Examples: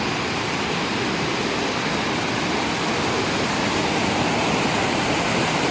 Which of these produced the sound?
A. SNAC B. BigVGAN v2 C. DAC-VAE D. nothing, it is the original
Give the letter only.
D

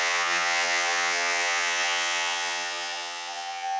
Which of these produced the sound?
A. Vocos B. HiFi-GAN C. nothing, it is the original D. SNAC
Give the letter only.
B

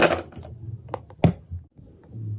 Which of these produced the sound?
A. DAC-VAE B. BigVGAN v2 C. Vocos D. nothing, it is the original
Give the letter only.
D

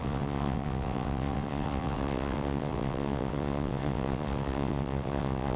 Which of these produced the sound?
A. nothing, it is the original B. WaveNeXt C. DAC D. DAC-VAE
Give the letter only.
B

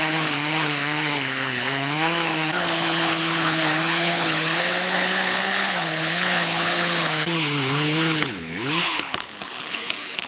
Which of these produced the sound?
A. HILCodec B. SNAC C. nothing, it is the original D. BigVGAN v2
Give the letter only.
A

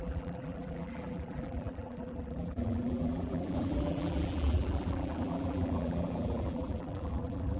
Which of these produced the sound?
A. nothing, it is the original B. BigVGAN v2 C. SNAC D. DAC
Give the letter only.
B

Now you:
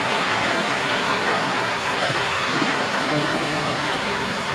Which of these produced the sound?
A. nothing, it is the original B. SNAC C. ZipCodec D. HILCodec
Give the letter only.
B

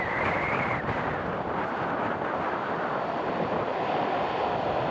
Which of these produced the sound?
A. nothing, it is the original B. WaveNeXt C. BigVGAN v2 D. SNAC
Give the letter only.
A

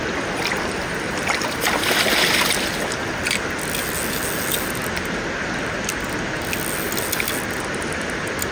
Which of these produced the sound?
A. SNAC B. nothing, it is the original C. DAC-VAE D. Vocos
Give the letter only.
B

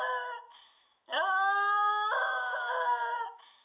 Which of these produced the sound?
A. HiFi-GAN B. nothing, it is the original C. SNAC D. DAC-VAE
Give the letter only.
D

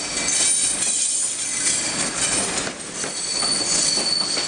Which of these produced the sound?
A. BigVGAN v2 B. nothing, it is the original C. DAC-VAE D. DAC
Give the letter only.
B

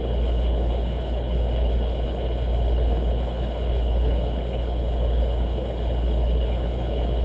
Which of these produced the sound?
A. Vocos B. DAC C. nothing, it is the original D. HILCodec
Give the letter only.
D